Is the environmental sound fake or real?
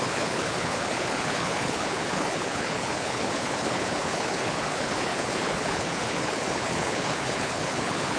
fake